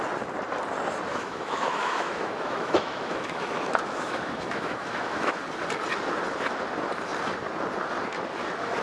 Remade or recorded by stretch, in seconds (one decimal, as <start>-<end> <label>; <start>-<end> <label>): 0.0-1.1 recorded; 1.1-5.4 remade; 5.4-8.8 recorded

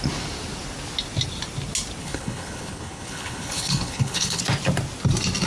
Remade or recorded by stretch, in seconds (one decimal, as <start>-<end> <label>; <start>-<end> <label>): 0.0-2.0 recorded; 2.0-4.4 remade; 4.4-5.5 recorded